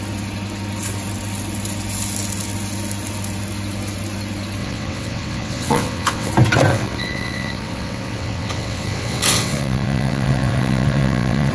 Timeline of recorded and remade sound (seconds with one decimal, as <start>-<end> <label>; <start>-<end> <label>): 0.0-4.6 recorded; 4.6-6.3 remade; 6.3-6.7 recorded; 6.7-11.5 remade